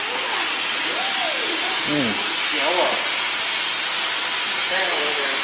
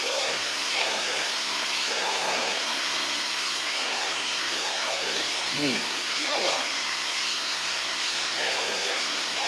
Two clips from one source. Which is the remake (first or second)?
second